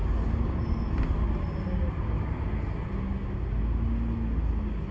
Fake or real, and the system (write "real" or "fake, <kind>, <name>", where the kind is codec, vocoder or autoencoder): real